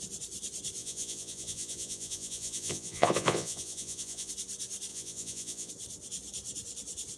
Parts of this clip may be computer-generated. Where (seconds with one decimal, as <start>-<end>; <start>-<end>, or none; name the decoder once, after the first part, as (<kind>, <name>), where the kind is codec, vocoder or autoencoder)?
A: 0.8-4.3 (vocoder, Vocos); 4.9-5.7